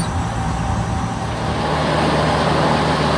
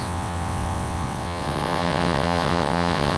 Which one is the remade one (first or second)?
second